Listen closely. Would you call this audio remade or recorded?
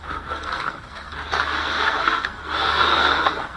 remade